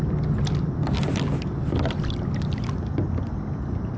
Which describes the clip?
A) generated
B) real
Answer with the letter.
B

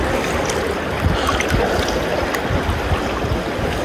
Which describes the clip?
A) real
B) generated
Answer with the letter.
A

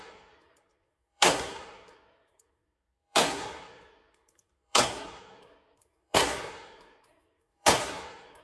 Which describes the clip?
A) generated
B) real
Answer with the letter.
A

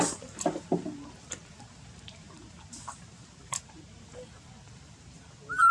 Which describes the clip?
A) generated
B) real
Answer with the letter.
A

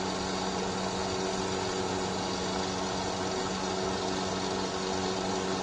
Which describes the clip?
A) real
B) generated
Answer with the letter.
A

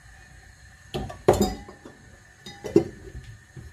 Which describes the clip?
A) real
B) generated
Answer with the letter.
B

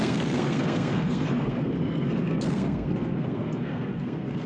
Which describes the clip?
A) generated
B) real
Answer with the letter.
A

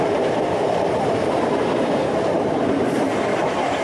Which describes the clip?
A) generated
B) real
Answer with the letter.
A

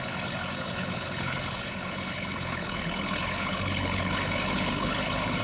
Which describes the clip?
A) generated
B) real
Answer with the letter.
A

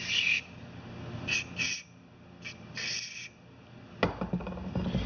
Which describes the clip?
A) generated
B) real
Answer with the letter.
B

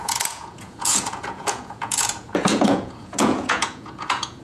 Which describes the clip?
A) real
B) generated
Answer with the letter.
B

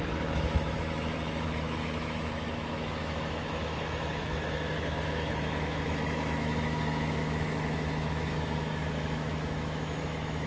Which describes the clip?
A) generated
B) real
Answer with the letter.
A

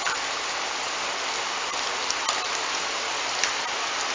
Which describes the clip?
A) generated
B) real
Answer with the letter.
B